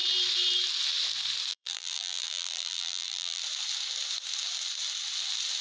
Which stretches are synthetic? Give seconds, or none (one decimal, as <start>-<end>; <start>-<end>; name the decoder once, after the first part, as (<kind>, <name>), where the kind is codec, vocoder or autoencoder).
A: 1.5-3.4 (vocoder, BigVGAN v2)